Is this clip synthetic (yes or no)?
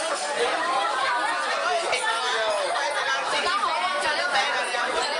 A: no